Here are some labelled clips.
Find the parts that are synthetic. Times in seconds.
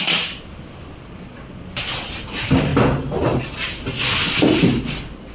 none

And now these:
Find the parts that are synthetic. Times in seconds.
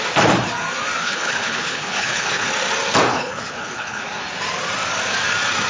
1.0-2.5; 3.1-4.0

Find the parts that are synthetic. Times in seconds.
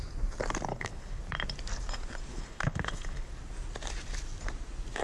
0.7-1.2; 2.3-3.3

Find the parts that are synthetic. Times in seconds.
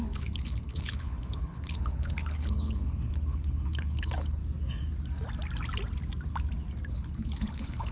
0.0-4.4; 6.9-7.9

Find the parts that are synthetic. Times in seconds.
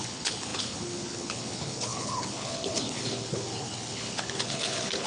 0.0-5.1